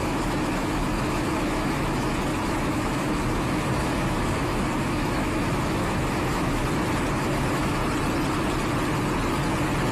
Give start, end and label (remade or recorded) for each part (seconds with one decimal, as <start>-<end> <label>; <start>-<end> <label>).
0.0-6.6 remade; 6.6-7.2 recorded; 7.2-7.8 remade; 7.8-9.9 recorded